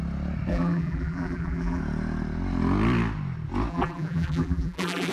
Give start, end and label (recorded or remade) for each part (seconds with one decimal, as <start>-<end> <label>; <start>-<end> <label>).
0.0-0.5 recorded; 0.5-1.8 remade; 1.8-3.7 recorded; 3.7-5.1 remade